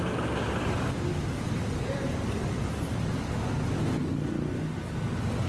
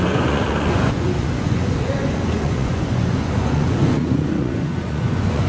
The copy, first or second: second